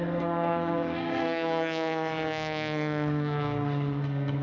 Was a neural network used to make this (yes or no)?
yes